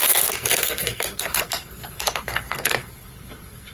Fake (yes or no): yes